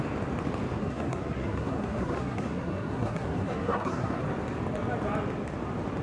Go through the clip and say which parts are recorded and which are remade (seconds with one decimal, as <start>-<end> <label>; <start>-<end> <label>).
0.0-0.8 recorded; 0.8-4.2 remade; 4.2-6.0 recorded